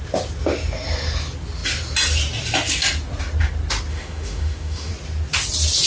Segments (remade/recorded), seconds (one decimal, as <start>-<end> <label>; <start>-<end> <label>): 0.0-3.9 recorded; 3.9-4.9 remade; 4.9-5.9 recorded